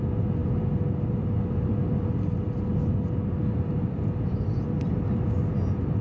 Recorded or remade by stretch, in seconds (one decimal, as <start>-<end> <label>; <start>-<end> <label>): 0.0-6.0 recorded